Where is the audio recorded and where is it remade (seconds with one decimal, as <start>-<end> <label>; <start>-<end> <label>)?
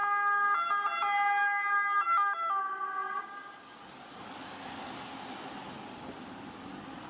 0.0-7.1 recorded